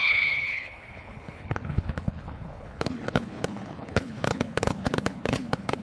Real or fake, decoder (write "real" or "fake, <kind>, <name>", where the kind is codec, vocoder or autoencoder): fake, codec, HILCodec